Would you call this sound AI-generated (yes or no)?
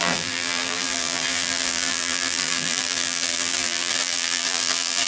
yes